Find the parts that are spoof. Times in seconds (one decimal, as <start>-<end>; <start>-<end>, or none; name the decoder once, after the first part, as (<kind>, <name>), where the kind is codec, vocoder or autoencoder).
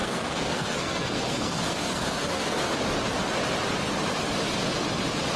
0.0-2.7 (codec, SNAC)